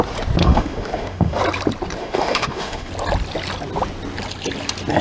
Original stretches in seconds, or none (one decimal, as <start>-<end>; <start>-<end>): 0.0-0.4; 1.4-2.0; 2.9-5.0